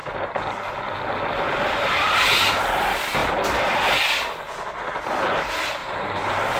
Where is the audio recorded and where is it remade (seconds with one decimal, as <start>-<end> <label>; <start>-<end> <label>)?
0.0-5.8 recorded; 5.8-6.6 remade